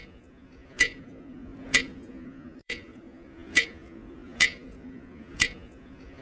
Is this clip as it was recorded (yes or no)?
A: no